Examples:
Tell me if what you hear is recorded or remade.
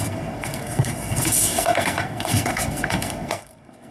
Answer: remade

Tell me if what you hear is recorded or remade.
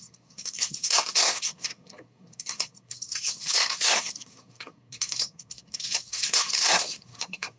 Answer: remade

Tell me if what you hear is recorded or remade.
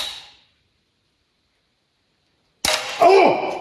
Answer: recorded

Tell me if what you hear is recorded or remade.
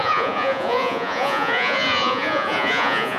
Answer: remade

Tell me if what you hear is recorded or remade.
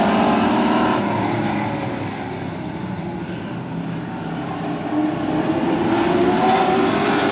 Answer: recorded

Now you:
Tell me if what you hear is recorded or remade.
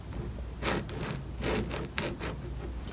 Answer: recorded